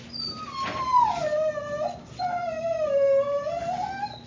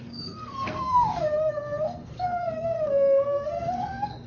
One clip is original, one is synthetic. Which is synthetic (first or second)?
second